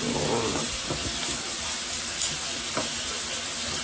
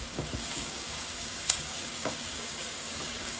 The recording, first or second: first